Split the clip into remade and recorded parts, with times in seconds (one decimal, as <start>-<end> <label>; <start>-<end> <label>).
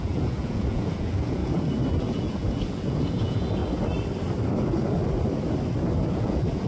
0.0-1.4 remade; 1.4-2.1 recorded; 2.1-3.6 remade; 3.6-6.1 recorded; 6.1-6.7 remade